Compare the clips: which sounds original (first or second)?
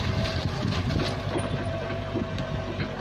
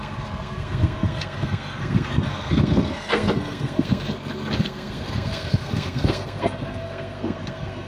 first